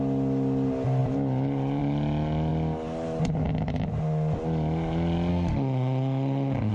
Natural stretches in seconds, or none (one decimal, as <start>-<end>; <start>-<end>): 0.0-5.3